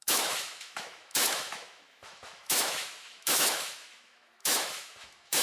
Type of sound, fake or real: fake